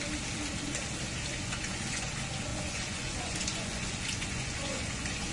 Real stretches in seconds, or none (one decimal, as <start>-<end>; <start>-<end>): 0.0-1.3; 2.1-2.5